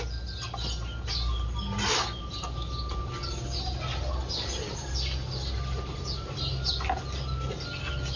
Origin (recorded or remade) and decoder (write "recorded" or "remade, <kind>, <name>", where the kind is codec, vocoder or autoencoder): recorded